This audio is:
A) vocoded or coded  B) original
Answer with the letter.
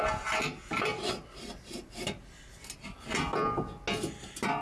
B